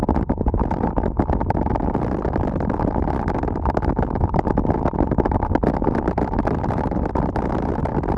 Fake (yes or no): no